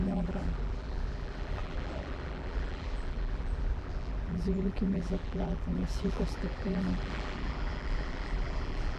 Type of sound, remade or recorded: remade